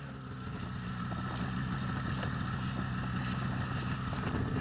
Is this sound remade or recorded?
recorded